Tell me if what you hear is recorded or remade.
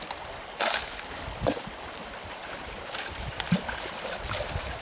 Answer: remade